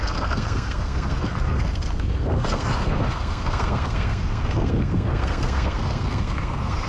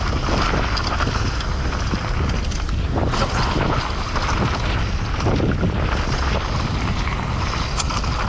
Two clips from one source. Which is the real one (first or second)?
second